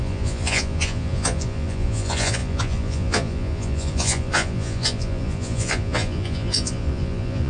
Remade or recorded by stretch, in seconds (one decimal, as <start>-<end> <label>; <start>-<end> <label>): 0.0-7.5 remade